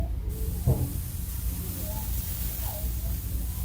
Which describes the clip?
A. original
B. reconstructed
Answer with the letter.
A